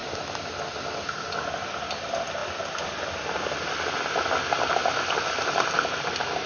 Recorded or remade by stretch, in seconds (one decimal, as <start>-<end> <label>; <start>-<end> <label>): 0.0-6.5 recorded

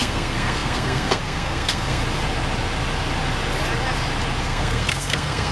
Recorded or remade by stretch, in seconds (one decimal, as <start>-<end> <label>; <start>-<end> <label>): 0.0-2.0 remade; 2.0-4.4 recorded; 4.4-5.5 remade

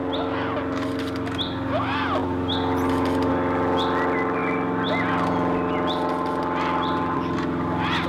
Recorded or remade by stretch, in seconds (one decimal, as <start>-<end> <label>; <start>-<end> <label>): 0.0-8.1 recorded

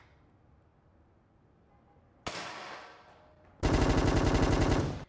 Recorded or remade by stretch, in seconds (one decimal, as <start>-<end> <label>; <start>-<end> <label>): 0.0-5.1 recorded

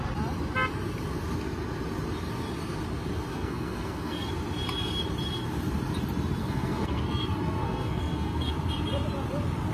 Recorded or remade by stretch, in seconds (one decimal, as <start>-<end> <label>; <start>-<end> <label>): 0.0-3.3 recorded; 3.3-4.3 remade; 4.3-6.4 recorded; 6.4-8.5 remade; 8.5-9.7 recorded

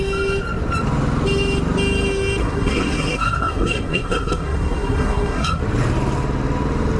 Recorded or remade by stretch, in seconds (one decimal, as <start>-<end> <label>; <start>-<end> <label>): 0.0-2.4 recorded; 2.4-5.6 remade; 5.6-7.0 recorded